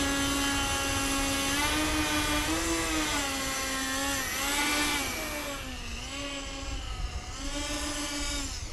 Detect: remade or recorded recorded